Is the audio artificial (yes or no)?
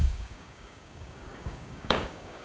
yes